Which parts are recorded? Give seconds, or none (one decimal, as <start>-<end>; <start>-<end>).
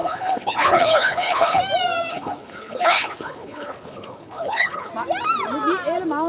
1.6-2.1; 4.9-6.3